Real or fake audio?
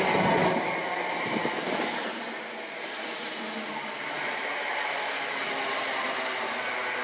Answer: real